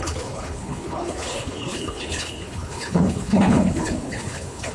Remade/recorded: remade